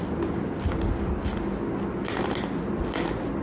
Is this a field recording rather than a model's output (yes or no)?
yes